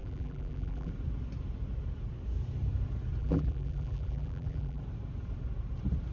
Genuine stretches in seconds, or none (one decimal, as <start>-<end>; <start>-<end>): 0.9-3.2; 4.8-6.1